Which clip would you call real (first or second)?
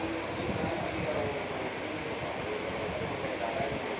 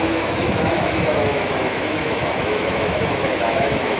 first